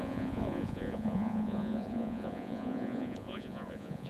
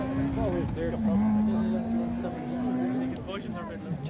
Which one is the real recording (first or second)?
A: second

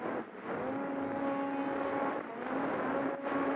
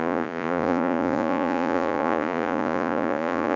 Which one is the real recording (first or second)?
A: first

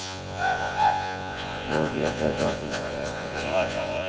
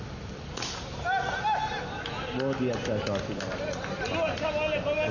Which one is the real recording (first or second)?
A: second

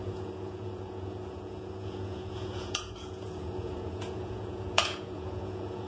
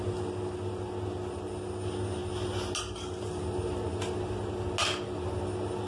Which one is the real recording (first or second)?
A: second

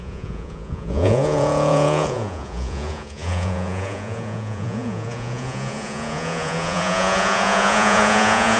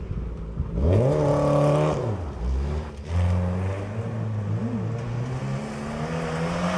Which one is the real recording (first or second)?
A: second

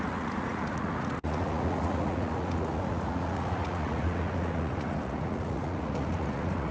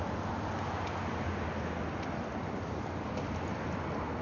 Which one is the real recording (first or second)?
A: second